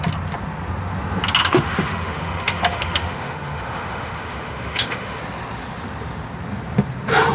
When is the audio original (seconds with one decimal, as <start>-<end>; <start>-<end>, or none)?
0.0-1.4; 5.2-7.3